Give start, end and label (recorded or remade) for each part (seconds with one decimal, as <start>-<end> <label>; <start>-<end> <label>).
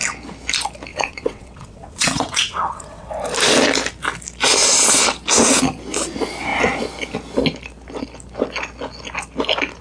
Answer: 0.0-0.9 recorded; 0.9-3.1 remade; 3.1-9.8 recorded